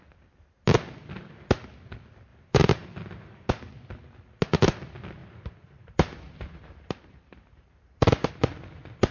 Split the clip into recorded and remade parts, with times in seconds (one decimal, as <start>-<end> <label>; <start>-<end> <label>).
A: 0.0-2.3 recorded; 2.3-3.5 remade; 3.5-5.2 recorded; 5.2-8.3 remade; 8.3-9.1 recorded